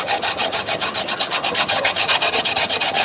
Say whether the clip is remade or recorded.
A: remade